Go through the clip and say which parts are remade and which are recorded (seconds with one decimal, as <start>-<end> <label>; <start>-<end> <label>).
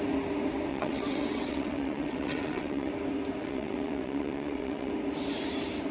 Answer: 0.0-0.7 recorded; 0.7-2.9 remade; 2.9-3.4 recorded; 3.4-4.9 remade; 4.9-5.9 recorded